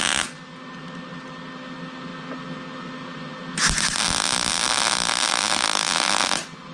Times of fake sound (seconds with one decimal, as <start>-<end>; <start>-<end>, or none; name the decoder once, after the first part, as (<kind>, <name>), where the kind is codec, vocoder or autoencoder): none

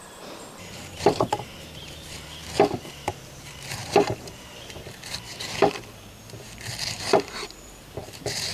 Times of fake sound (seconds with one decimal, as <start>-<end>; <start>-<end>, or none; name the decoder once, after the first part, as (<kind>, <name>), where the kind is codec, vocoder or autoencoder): 0.0-2.4 (vocoder, BigVGAN v2); 3.1-8.5

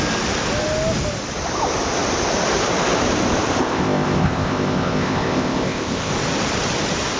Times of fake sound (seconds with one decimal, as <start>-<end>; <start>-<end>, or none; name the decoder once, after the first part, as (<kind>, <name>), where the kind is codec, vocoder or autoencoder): 3.6-6.1 (codec, ZipCodec)

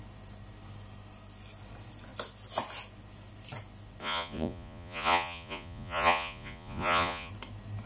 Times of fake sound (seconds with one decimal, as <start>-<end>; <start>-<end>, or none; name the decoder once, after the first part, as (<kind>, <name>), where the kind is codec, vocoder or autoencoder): 4.0-7.3 (vocoder, Vocos)